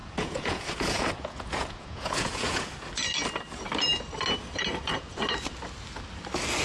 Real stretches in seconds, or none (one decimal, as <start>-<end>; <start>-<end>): 2.7-6.6